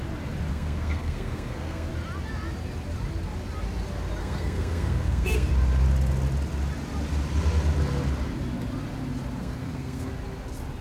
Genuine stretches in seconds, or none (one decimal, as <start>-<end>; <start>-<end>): 0.0-0.5; 1.9-4.2; 5.5-9.4; 10.1-10.8